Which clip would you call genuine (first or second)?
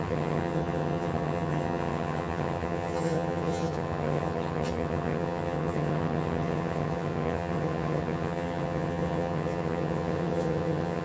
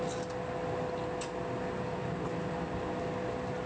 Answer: second